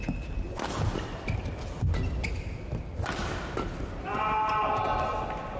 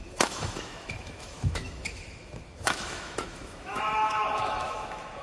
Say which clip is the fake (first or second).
second